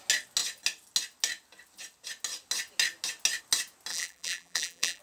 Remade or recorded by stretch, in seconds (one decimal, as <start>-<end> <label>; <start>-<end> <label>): 0.0-3.9 recorded; 3.9-5.0 remade